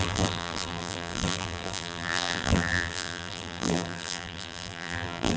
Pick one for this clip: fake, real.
fake